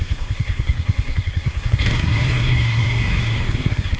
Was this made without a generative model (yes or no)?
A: no